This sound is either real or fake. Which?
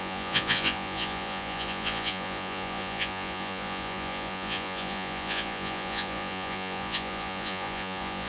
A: fake